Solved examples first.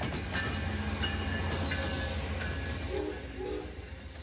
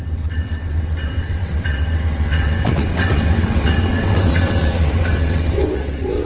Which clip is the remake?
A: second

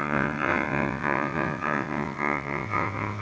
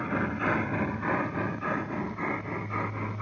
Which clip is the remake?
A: first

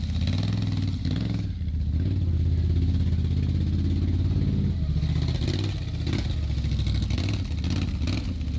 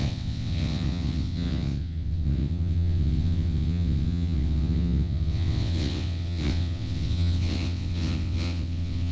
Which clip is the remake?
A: second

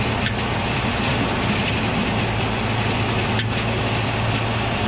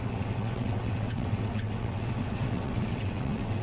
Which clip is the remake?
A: second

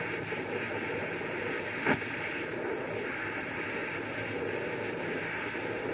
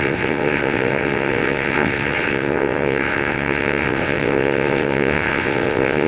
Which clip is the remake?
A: second